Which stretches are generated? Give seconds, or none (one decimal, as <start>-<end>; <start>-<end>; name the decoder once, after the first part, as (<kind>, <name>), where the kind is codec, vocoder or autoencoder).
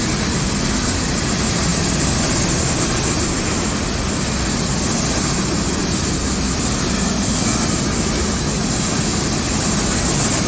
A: none